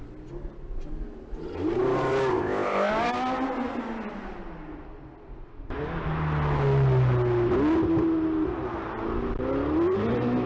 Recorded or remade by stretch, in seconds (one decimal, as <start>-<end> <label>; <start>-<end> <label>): 0.0-2.3 recorded; 2.3-2.9 remade; 2.9-10.5 recorded